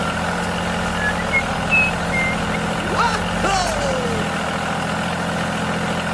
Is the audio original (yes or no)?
yes